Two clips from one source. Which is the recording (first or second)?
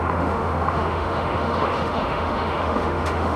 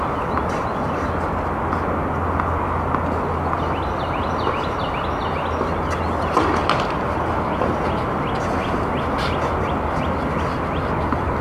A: second